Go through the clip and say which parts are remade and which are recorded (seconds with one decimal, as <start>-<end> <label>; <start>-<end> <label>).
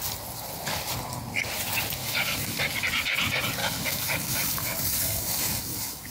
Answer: 0.0-2.0 recorded; 2.0-2.6 remade; 2.6-3.6 recorded; 3.6-6.1 remade